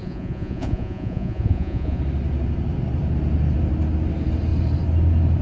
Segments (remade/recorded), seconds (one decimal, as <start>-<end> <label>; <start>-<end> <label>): 0.0-2.0 remade; 2.0-5.4 recorded